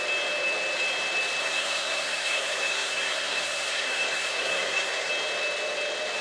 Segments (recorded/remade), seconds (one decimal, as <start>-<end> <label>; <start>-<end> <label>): 0.0-1.4 recorded; 1.4-5.1 remade; 5.1-6.2 recorded